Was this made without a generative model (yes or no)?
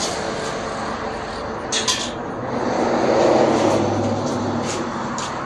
yes